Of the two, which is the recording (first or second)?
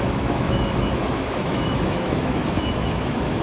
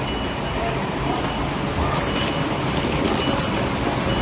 second